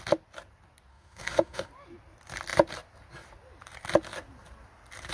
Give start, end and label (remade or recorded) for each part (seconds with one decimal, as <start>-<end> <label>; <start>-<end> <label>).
0.0-0.9 recorded; 0.9-1.7 remade; 1.7-5.1 recorded